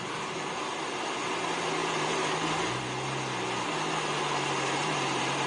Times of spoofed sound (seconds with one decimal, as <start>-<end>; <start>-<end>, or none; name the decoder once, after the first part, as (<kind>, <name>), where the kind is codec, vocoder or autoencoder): 1.8-2.8 (vocoder, BigVGAN v2)